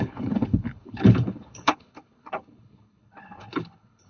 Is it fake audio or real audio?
fake